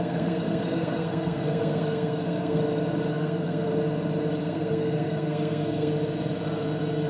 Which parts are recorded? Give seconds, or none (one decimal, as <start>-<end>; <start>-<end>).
2.6-3.1; 3.7-4.4; 5.9-7.1